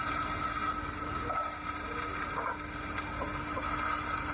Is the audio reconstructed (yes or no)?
no